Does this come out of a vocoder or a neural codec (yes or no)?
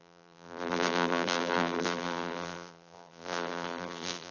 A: yes